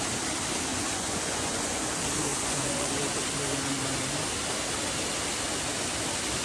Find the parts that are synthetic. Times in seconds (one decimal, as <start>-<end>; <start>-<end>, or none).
0.7-1.9; 2.3-2.9